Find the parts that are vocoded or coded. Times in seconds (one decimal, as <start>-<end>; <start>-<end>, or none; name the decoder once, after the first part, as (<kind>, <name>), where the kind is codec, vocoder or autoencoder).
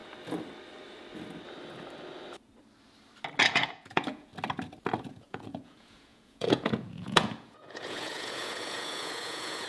3.5-4.3 (vocoder, Vocos); 5.0-9.7